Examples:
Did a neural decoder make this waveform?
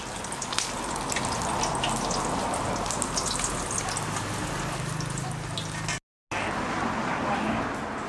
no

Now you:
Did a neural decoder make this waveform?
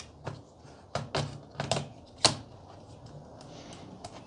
no